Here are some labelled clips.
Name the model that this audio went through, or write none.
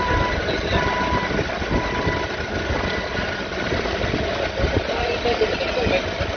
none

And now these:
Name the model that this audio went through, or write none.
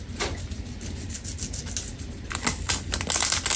none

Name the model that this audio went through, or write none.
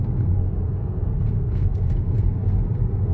codec, SNAC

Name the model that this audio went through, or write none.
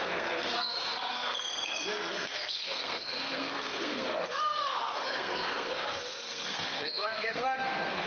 codec, SNAC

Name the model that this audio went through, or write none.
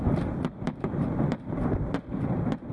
none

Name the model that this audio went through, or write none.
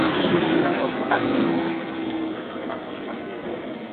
codec, SNAC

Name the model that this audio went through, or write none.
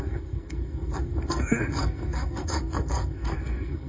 codec, SNAC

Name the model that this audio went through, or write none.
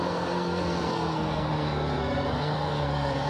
codec, SNAC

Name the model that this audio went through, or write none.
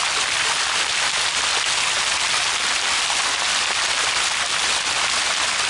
none